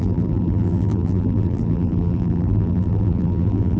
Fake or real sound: fake